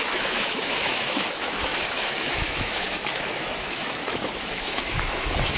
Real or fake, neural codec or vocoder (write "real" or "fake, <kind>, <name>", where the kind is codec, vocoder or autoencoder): fake, autoencoder, DAC-VAE